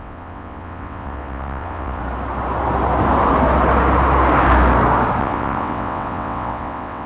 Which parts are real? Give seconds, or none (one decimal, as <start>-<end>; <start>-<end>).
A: 2.0-5.2